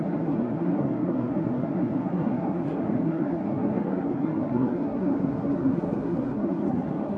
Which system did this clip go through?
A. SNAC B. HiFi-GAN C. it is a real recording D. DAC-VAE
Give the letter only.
A